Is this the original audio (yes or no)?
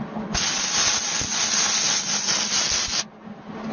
yes